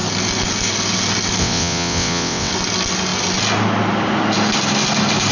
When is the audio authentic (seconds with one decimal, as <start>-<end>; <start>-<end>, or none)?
0.0-1.4; 2.5-5.3